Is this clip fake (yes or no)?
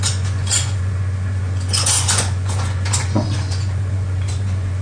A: yes